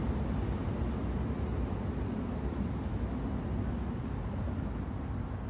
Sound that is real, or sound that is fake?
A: real